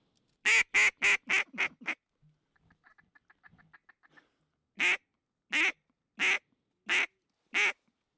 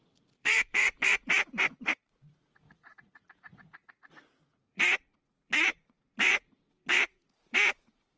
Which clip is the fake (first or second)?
second